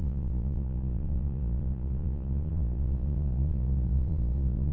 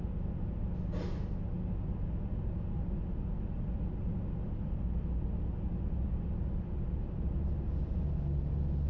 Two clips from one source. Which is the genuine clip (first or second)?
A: second